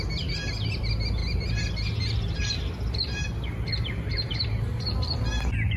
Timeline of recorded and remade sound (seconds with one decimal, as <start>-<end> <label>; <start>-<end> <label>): 0.0-4.1 recorded; 4.1-4.9 remade; 4.9-5.8 recorded